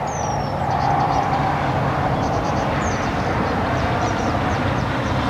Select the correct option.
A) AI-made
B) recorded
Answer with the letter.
A